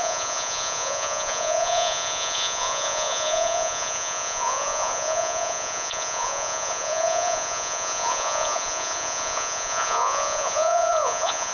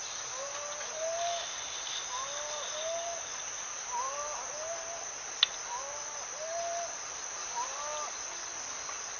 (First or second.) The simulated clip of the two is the first